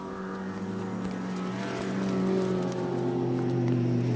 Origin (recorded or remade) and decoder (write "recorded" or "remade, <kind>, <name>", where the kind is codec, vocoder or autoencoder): recorded